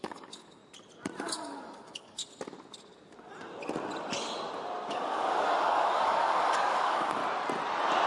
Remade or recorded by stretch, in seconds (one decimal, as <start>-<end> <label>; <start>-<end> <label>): 0.0-0.6 remade; 0.6-1.2 recorded; 1.2-2.2 remade; 2.2-4.9 recorded; 4.9-7.2 remade; 7.2-8.1 recorded